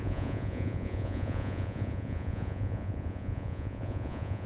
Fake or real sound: fake